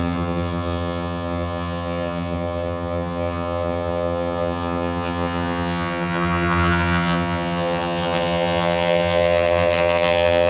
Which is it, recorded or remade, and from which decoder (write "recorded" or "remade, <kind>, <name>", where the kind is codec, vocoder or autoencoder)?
remade, vocoder, HiFi-GAN